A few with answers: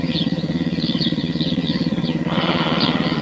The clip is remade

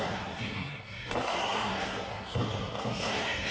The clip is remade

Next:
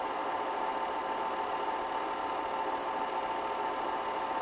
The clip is recorded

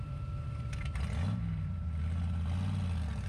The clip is recorded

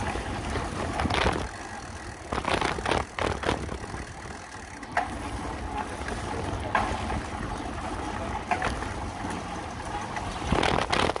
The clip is recorded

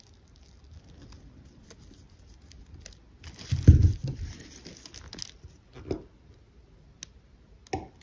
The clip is recorded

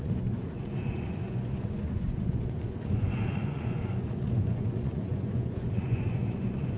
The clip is remade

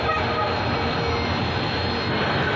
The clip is recorded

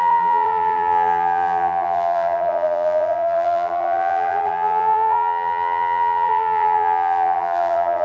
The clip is remade